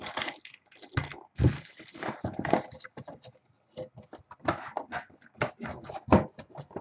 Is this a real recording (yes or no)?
yes